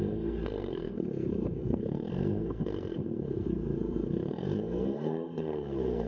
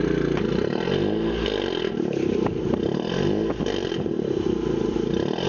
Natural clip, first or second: second